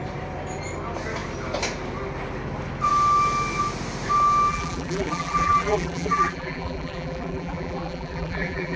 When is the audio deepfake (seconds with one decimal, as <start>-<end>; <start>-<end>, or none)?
4.5-8.8